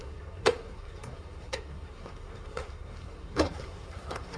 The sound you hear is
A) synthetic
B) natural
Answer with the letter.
A